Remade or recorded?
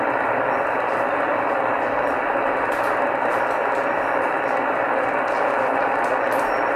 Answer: remade